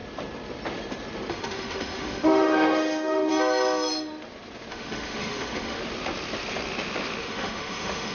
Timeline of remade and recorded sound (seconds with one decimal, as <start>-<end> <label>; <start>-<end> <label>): 0.0-1.3 recorded; 1.3-3.3 remade; 3.3-4.7 recorded; 4.7-5.8 remade; 5.8-7.2 recorded; 7.2-8.1 remade